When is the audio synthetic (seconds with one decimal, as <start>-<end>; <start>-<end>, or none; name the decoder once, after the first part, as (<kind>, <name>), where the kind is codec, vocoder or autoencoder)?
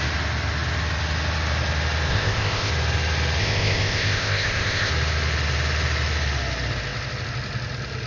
2.1-2.7 (codec, ZipCodec); 3.4-4.9